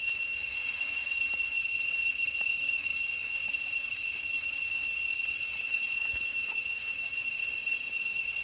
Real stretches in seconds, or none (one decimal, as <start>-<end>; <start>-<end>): 7.4-7.9